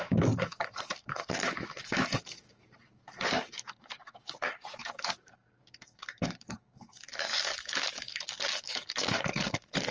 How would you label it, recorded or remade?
remade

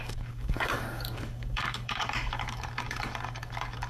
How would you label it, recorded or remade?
remade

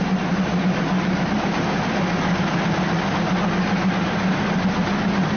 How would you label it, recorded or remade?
recorded